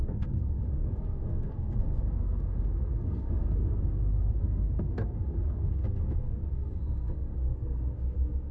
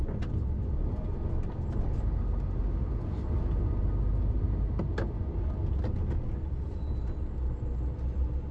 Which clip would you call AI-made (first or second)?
first